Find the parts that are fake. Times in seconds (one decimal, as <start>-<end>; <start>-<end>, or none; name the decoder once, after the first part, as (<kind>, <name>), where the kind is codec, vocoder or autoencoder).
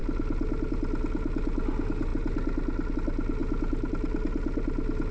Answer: none